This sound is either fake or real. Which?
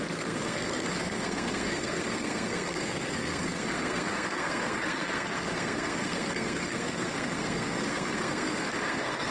fake